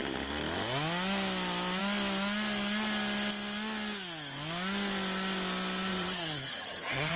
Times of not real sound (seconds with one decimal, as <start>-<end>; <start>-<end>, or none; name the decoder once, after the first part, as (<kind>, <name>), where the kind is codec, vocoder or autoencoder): 5.9-7.2 (vocoder, HiFi-GAN)

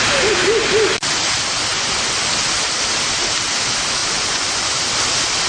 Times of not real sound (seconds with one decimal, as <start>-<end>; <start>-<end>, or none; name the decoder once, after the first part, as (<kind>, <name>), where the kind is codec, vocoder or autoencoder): 1.7-2.3 (vocoder, Vocos); 4.0-4.8

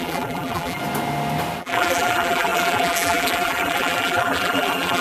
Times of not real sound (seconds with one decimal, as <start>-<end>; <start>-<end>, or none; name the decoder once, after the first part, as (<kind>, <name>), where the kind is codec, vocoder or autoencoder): 0.0-0.8 (vocoder, BigVGAN v2); 1.6-5.0